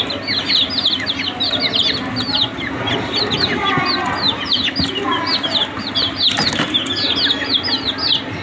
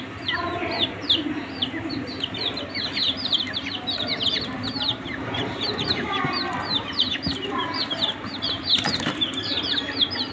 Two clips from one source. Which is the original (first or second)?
first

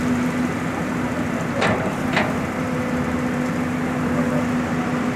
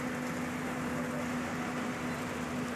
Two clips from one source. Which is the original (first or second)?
second